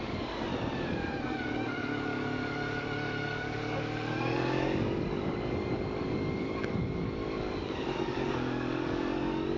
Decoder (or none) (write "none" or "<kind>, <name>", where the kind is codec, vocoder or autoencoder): codec, DAC